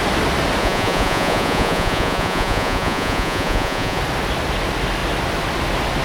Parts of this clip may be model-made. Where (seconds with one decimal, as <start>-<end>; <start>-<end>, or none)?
0.6-4.0